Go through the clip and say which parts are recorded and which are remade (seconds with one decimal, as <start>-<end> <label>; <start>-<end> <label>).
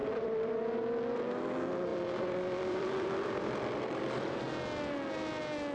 0.0-0.5 remade; 0.5-1.9 recorded; 1.9-4.4 remade; 4.4-5.7 recorded